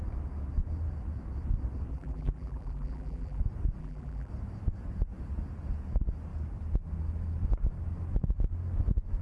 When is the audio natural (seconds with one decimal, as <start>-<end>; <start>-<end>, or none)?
0.0-1.9; 3.4-3.8; 4.3-9.2